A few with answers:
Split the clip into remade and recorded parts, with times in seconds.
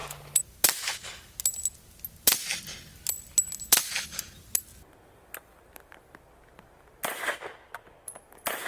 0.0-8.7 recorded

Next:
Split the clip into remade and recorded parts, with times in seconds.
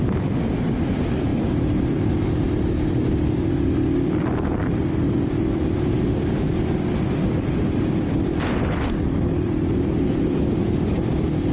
0.0-11.5 remade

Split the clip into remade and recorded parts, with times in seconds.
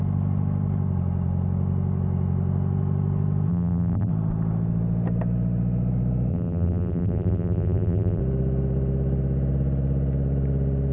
0.0-3.5 recorded; 3.5-4.1 remade; 4.1-6.3 recorded; 6.3-8.2 remade; 8.2-10.9 recorded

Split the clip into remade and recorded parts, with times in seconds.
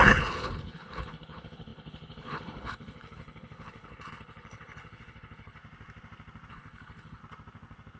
0.0-5.6 remade; 5.6-6.5 recorded; 6.5-7.2 remade; 7.2-8.0 recorded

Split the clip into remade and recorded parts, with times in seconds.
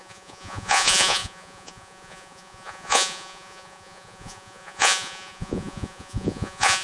0.0-6.8 remade